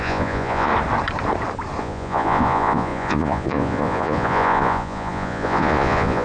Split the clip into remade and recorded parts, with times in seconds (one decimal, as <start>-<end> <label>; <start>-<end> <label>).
0.0-0.7 remade; 0.7-1.8 recorded; 1.8-6.2 remade

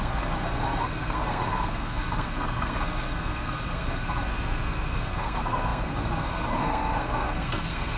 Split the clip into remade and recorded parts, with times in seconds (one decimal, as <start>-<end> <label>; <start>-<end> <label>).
0.0-8.0 remade

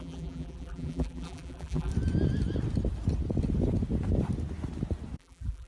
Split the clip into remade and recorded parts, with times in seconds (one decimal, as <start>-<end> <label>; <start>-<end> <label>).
0.0-1.9 remade; 1.9-5.2 recorded; 5.2-5.7 remade

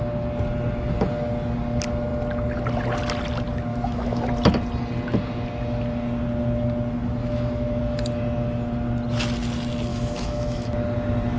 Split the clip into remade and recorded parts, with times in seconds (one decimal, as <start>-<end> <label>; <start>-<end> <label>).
0.0-3.7 recorded; 3.7-4.3 remade; 4.3-7.2 recorded; 7.2-7.8 remade; 7.8-9.9 recorded; 9.9-10.7 remade; 10.7-11.4 recorded

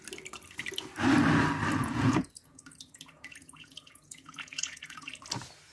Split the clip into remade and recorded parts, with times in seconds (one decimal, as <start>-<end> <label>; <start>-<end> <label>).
0.0-1.8 recorded; 1.8-5.1 remade; 5.1-5.7 recorded

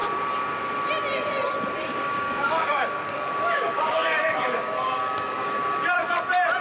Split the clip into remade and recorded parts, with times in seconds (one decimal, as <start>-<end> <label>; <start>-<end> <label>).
0.0-1.9 recorded; 1.9-5.6 remade; 5.6-6.6 recorded

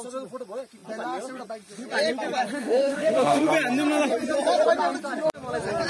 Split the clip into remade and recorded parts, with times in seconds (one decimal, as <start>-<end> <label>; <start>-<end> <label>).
0.0-2.6 recorded; 2.6-3.5 remade; 3.5-5.9 recorded

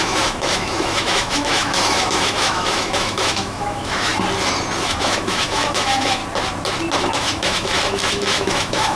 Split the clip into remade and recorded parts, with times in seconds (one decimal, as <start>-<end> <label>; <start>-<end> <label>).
0.0-4.1 remade; 4.1-4.9 recorded; 4.9-6.2 remade; 6.2-7.1 recorded; 7.1-9.0 remade